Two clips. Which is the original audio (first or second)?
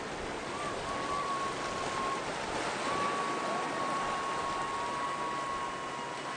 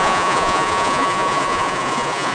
first